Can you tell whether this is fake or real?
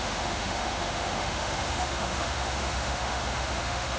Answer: fake